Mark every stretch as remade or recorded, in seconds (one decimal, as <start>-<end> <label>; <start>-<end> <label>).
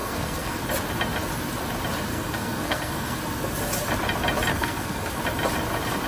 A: 0.0-0.6 remade; 0.6-2.1 recorded; 2.1-3.2 remade; 3.2-4.5 recorded; 4.5-5.2 remade; 5.2-6.1 recorded